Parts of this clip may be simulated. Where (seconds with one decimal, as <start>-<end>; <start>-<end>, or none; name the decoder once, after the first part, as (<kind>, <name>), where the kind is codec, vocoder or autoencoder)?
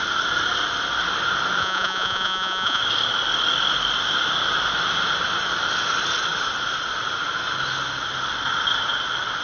1.6-2.8 (vocoder, Vocos)